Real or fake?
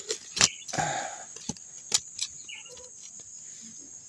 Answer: real